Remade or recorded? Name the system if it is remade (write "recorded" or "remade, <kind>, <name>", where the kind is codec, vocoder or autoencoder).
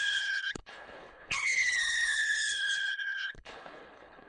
remade, codec, HILCodec